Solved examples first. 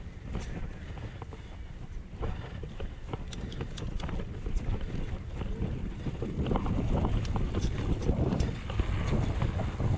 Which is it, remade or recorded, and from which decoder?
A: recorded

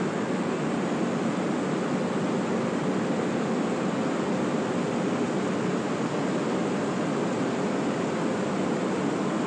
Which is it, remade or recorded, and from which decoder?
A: recorded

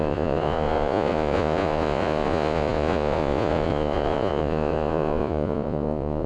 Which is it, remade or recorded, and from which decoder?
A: remade, vocoder, Vocos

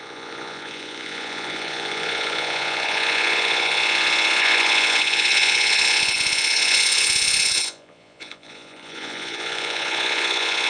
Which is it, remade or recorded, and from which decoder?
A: remade, vocoder, Vocos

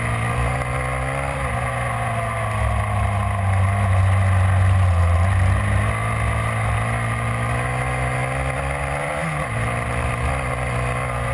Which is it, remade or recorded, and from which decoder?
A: recorded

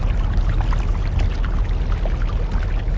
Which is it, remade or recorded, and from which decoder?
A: recorded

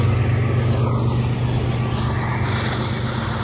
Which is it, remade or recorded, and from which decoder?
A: recorded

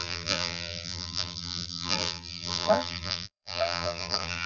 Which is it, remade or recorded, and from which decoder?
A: remade, vocoder, BigVGAN v2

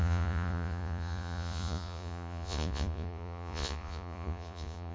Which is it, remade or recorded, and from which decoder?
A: remade, vocoder, Vocos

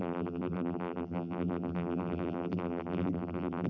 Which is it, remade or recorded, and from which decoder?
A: remade, vocoder, BigVGAN v2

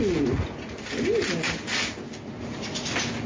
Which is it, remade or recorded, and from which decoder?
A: recorded